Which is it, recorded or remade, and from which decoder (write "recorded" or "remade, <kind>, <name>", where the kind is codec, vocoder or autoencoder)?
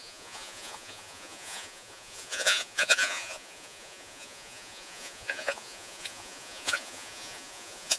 remade, vocoder, Vocos